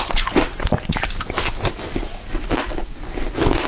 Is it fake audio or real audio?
real